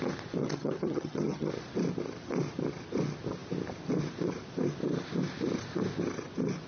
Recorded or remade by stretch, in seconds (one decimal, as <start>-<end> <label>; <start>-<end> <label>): 0.0-0.4 recorded; 0.4-1.5 remade; 1.5-6.7 recorded